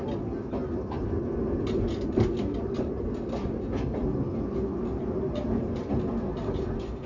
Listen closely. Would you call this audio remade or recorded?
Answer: recorded